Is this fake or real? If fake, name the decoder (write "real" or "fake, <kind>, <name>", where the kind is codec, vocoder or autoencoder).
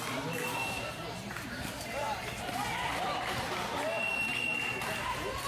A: real